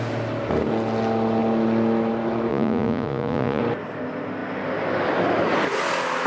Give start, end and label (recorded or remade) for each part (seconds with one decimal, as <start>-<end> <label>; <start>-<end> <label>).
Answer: 0.0-2.5 recorded; 2.5-3.6 remade; 3.6-6.3 recorded